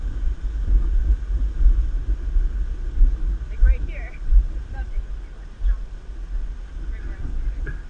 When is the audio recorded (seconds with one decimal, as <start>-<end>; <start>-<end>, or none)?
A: 0.0-4.2; 4.9-7.9